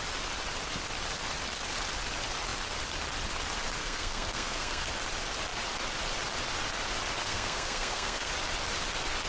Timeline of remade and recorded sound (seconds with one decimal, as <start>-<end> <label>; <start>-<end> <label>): 0.0-3.8 recorded; 3.8-4.9 remade; 4.9-7.2 recorded; 7.2-8.3 remade; 8.3-9.3 recorded